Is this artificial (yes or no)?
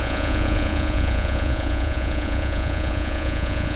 yes